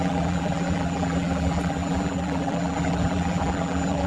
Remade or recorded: remade